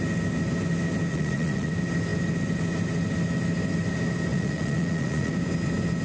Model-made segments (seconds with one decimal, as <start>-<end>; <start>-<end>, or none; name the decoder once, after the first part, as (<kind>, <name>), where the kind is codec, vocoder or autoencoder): 1.1-1.7 (vocoder, Vocos); 4.3-5.3